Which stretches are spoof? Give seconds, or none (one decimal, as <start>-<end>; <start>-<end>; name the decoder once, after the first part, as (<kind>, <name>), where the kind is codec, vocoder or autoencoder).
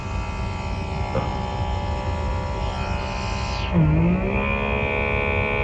none